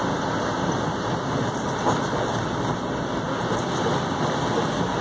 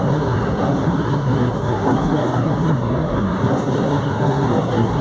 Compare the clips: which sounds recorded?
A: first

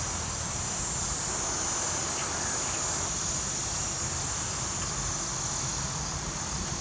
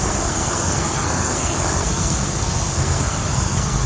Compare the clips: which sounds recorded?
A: first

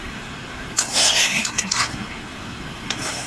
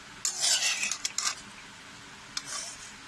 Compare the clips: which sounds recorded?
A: second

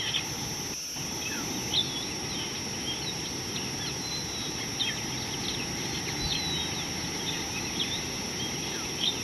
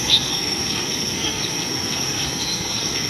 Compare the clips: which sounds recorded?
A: first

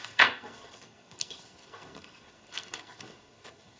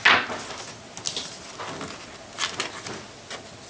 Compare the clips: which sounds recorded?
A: second